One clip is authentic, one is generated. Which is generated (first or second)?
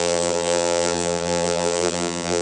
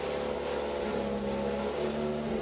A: first